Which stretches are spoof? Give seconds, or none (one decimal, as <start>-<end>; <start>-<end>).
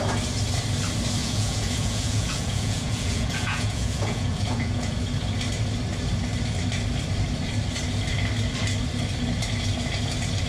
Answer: 1.2-5.0